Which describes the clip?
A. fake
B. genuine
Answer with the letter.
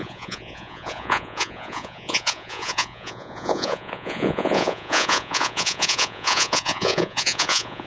A